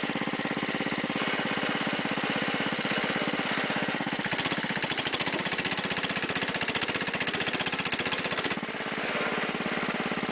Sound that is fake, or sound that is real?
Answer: real